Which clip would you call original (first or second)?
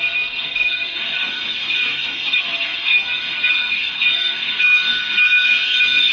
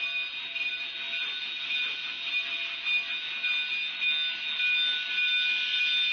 second